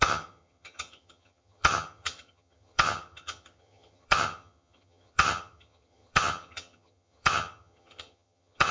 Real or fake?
fake